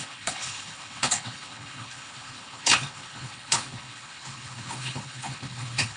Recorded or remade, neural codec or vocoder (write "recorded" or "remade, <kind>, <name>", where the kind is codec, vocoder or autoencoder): remade, codec, HILCodec